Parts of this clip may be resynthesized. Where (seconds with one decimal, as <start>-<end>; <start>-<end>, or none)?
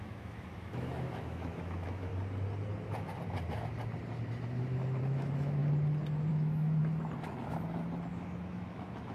0.0-2.1; 5.0-5.6; 6.3-6.8; 8.1-9.1